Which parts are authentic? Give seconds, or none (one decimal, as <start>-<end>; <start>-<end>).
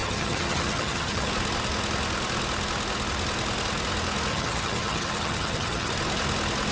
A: 1.3-4.3; 5.9-6.7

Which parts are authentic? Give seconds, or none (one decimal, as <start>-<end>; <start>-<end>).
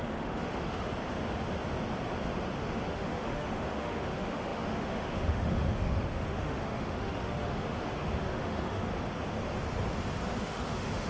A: 0.9-2.6; 8.9-10.4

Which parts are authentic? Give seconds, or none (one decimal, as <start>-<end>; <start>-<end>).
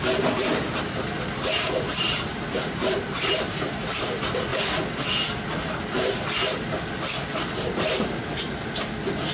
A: 4.5-7.6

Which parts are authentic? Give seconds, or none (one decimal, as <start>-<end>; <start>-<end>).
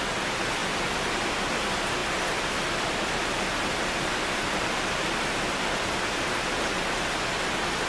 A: 0.0-2.0; 6.7-7.9